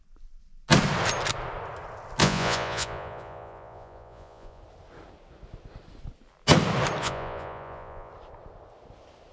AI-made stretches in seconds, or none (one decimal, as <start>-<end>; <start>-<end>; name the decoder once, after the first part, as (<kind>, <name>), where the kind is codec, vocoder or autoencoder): 2.2-4.6 (vocoder, Vocos); 7.0-8.1